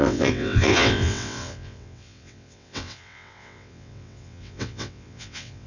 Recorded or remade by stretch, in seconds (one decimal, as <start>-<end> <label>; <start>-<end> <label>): 0.0-5.7 remade